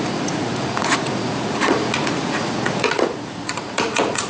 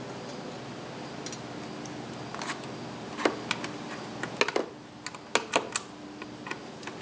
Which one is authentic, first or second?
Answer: second